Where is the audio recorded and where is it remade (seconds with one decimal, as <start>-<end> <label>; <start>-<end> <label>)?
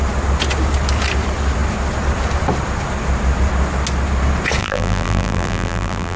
0.0-4.6 recorded; 4.6-6.2 remade